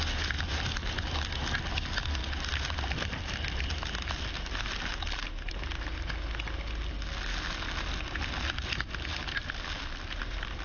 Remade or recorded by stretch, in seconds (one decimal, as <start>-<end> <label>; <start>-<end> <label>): 0.0-10.6 recorded